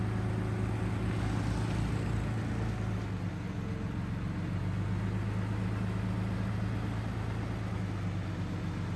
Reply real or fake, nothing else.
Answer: real